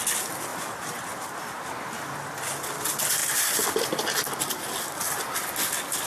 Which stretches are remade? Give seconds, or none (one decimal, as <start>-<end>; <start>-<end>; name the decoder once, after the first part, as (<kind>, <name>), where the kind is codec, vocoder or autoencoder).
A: none

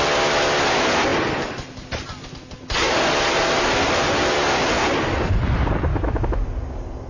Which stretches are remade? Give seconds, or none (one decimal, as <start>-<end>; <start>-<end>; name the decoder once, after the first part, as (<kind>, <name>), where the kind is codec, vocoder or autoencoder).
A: 5.9-6.4 (autoencoder, DAC-VAE)